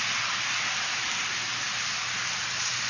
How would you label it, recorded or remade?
recorded